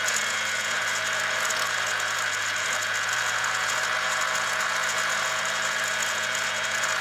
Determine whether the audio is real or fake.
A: fake